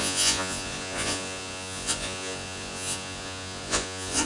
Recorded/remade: remade